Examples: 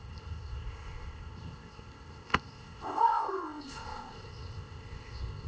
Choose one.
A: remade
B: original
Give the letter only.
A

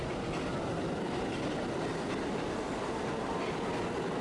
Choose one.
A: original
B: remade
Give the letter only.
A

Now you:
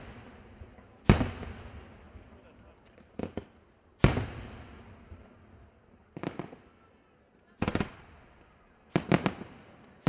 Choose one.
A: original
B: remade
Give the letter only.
A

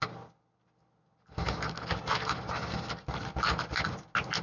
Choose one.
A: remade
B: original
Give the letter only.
B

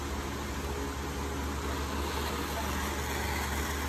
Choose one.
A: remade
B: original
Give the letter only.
B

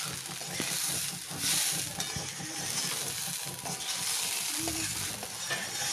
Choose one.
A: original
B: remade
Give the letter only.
A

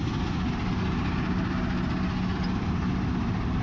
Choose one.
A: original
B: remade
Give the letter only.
A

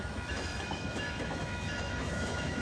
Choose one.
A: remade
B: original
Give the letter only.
A